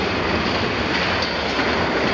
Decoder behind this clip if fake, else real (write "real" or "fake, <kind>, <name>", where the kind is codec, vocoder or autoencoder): real